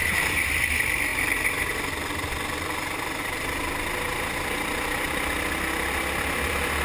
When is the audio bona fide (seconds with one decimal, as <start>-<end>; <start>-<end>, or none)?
0.0-6.8